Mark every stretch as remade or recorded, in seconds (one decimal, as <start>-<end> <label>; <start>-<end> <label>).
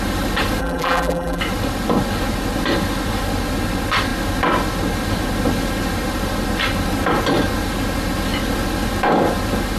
0.0-0.6 recorded; 0.6-1.4 remade; 1.4-9.8 recorded